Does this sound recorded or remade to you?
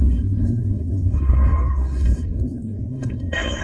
remade